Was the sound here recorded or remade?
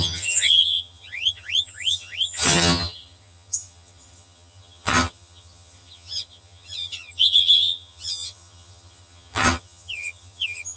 remade